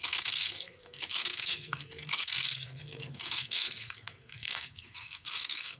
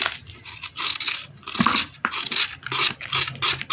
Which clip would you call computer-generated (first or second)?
first